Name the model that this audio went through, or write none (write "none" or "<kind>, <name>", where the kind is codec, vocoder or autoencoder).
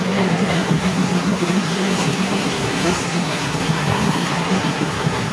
codec, SNAC